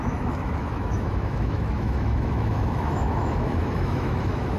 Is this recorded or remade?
remade